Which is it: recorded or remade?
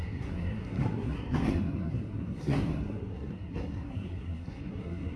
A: remade